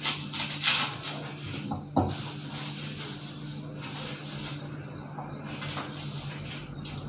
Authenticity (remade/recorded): recorded